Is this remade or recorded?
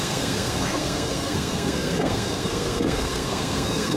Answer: remade